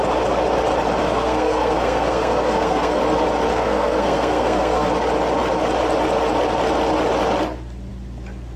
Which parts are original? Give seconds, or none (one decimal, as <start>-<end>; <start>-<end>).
0.0-1.0; 3.0-3.5; 4.9-8.6

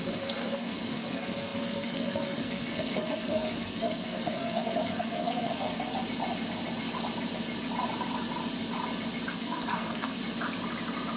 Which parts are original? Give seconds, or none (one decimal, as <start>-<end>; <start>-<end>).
5.9-9.3; 10.2-11.2

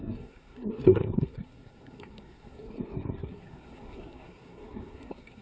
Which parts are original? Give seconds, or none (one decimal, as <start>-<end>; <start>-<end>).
none

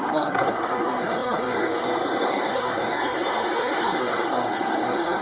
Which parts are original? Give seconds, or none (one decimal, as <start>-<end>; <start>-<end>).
none